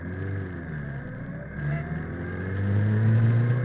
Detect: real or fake real